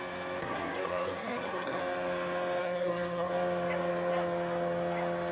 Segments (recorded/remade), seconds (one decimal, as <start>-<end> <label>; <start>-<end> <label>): 0.0-0.4 recorded; 0.4-1.8 remade; 1.8-2.6 recorded; 2.6-3.3 remade; 3.3-5.3 recorded